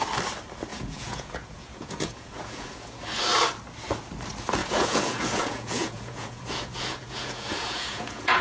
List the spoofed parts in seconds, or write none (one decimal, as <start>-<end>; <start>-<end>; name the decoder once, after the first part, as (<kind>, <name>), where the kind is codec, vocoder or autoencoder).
0.7-3.0 (vocoder, Vocos); 4.6-8.4